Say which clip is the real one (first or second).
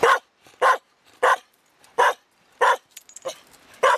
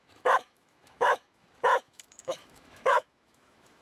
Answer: first